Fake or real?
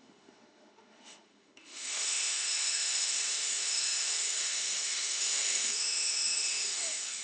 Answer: fake